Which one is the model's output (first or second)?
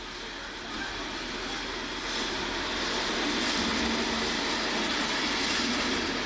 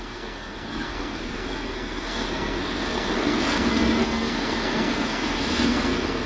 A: second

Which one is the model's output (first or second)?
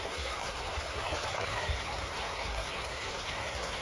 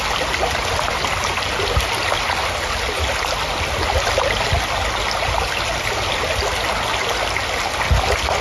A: first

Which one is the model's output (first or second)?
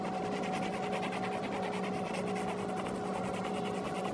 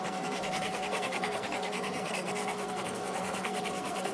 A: second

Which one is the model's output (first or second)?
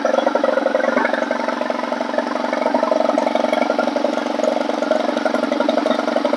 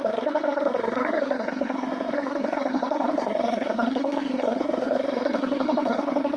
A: second